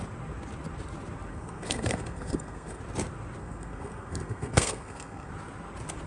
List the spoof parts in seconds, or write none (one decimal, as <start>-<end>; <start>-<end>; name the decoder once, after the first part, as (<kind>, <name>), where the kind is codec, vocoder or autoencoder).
1.3-2.8 (codec, SNAC); 3.4-5.3